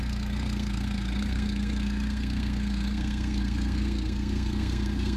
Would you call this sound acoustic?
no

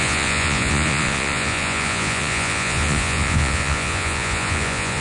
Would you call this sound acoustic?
no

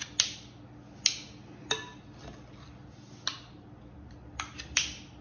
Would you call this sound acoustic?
yes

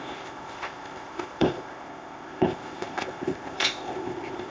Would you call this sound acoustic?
no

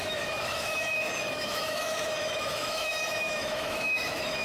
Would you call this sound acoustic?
no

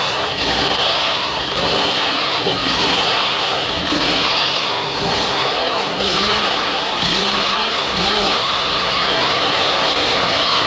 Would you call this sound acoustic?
no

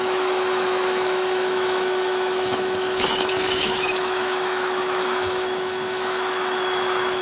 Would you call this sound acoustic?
no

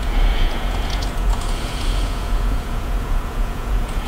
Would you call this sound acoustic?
no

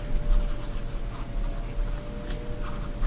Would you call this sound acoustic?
yes